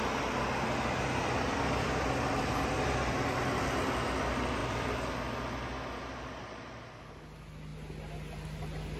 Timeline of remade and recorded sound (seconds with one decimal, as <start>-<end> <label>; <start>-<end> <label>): 0.0-9.0 recorded